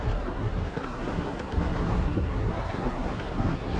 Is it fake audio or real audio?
fake